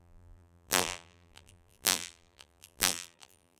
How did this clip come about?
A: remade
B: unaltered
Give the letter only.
A